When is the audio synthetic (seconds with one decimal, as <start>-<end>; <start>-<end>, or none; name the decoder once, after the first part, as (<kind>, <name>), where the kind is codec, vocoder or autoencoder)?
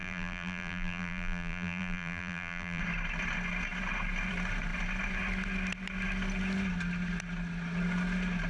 0.0-2.8 (vocoder, BigVGAN v2)